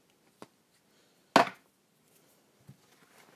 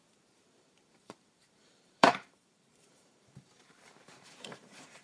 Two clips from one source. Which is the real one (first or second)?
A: first